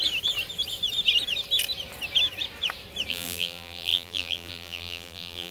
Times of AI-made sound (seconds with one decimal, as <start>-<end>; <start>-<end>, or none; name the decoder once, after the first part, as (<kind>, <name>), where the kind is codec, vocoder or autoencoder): 3.1-5.5 (vocoder, BigVGAN v2)

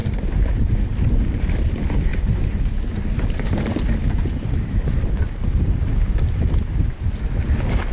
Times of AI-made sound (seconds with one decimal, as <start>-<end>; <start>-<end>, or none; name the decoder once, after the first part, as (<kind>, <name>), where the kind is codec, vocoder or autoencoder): 0.0-0.7 (vocoder, BigVGAN v2); 2.1-5.2